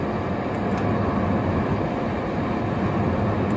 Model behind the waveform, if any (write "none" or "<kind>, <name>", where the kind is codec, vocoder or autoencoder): none